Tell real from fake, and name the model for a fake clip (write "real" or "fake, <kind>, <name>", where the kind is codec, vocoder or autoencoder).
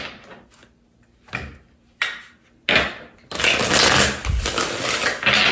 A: real